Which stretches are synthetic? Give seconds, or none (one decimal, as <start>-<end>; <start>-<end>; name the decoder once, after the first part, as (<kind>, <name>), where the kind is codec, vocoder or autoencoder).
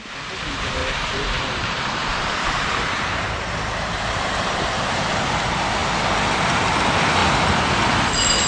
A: 0.8-5.2 (vocoder, BigVGAN v2)